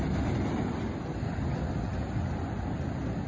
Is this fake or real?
real